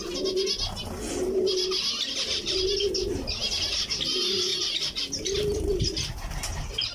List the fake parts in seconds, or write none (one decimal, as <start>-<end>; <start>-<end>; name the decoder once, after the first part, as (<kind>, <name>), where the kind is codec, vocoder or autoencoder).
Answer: none